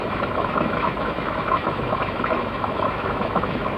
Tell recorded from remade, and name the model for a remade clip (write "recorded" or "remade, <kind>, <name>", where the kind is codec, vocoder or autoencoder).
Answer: remade, autoencoder, DAC-VAE